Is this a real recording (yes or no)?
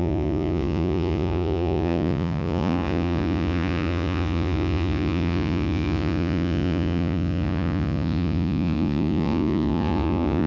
no